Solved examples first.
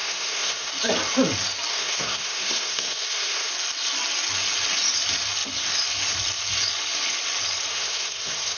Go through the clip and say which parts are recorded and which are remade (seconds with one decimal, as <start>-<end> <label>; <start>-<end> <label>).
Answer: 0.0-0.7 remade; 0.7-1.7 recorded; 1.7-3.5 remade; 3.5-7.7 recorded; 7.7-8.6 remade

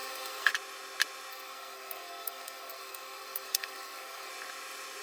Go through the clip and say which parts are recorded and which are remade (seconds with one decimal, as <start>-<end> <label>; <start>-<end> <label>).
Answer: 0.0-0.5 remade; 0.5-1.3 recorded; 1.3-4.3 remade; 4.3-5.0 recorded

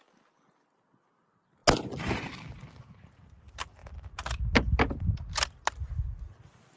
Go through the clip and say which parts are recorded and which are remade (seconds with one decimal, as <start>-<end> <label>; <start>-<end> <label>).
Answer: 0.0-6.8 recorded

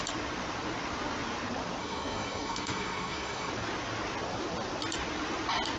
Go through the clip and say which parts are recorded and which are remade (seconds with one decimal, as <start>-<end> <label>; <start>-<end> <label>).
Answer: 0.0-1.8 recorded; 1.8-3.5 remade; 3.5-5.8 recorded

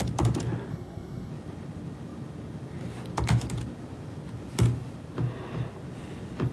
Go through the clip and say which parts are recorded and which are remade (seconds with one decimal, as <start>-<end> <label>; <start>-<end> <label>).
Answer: 0.0-0.7 recorded; 0.7-1.3 remade; 1.3-6.5 recorded